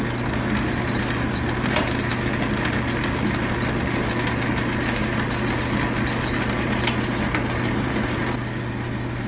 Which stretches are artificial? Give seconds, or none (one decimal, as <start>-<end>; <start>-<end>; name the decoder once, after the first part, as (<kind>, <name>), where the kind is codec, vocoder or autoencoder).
none